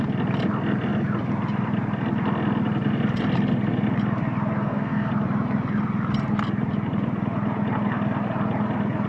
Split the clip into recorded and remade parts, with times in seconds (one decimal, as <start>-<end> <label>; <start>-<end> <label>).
0.0-4.6 recorded; 4.6-5.1 remade; 5.1-9.1 recorded